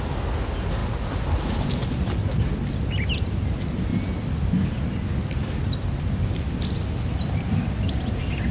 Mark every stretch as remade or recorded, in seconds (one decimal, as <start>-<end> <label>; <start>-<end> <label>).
0.0-8.5 recorded